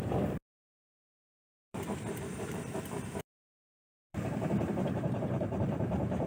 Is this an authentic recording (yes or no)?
no